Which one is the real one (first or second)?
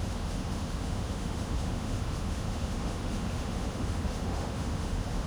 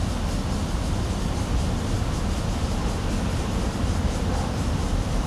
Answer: second